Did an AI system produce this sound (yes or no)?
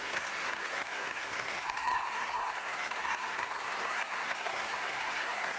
yes